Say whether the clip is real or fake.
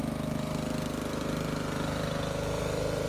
fake